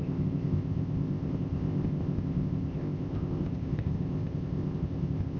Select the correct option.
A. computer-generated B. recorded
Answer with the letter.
A